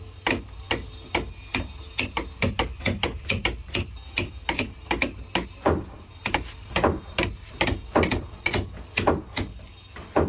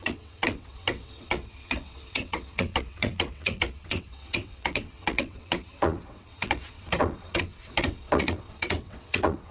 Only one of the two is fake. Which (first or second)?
second